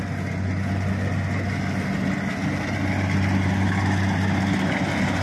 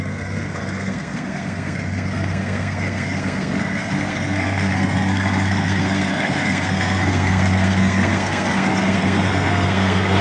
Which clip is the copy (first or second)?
second